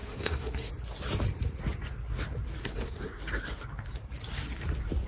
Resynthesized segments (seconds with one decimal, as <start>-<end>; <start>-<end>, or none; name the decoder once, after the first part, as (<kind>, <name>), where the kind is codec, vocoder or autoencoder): 0.0-0.7 (codec, SNAC); 2.6-3.2